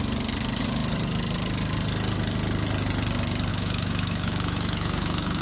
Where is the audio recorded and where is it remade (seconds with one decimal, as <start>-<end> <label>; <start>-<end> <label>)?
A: 0.0-3.5 recorded; 3.5-5.4 remade